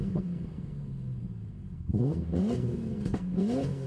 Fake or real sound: fake